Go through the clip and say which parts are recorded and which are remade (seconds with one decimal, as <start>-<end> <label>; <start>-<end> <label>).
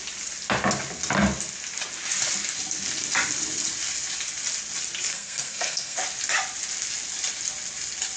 0.0-5.1 recorded; 5.1-6.0 remade; 6.0-8.2 recorded